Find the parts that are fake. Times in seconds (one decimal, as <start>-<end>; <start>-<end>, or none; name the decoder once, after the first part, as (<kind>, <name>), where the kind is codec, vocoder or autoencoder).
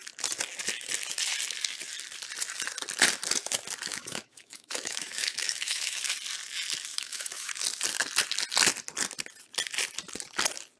3.9-6.0 (autoencoder, DAC-VAE); 6.9-7.5